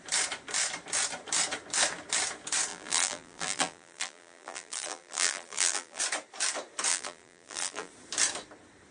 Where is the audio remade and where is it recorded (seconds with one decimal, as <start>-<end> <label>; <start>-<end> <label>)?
0.0-2.7 recorded; 2.7-6.0 remade; 6.0-6.9 recorded; 6.9-7.9 remade; 7.9-8.9 recorded